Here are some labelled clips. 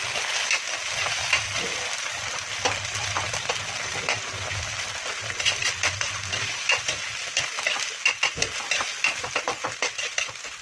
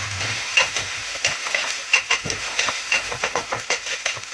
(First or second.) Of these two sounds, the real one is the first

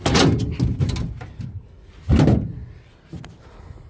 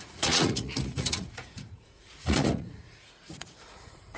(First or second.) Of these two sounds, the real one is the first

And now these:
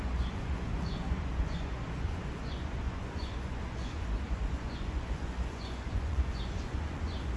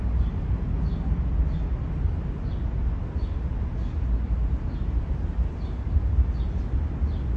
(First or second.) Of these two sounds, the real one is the second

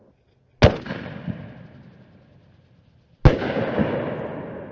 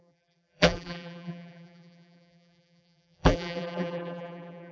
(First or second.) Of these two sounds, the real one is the first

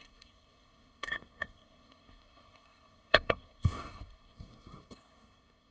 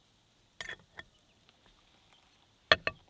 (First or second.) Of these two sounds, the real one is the second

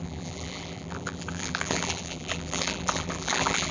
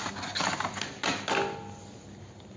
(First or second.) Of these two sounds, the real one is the second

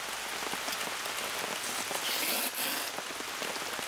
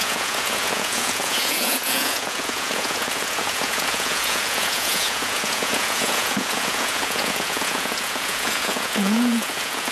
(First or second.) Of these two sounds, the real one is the first